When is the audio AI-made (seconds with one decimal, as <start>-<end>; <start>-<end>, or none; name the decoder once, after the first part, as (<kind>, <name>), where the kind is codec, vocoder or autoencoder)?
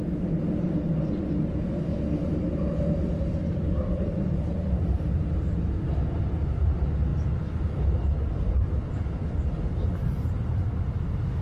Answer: none